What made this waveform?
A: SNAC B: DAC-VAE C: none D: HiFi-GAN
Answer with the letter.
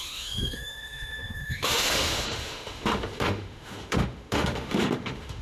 B